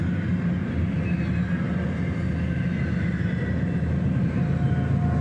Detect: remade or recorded recorded